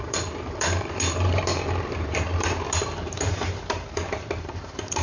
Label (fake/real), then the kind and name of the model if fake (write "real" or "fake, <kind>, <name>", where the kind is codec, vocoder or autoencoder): fake, vocoder, BigVGAN v2